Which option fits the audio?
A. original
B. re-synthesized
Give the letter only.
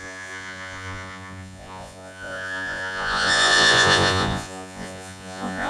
B